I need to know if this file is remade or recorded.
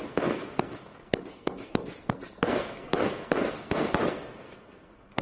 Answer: remade